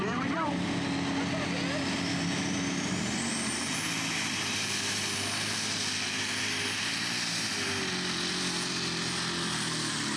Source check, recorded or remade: recorded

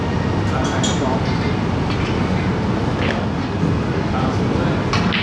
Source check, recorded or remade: recorded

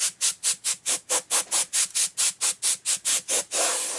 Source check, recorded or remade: recorded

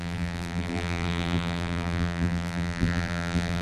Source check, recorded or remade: remade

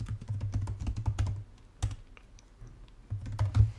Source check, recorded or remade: recorded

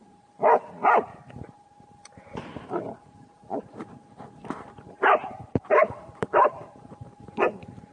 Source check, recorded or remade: remade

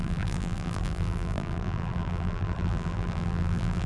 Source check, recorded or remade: remade